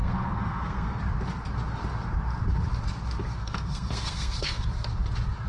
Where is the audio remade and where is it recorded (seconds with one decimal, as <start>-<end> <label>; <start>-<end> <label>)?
0.0-1.0 remade; 1.0-3.4 recorded; 3.4-4.6 remade; 4.6-5.5 recorded